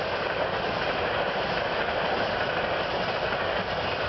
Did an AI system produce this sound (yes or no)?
no